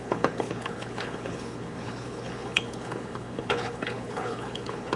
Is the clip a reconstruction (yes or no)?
yes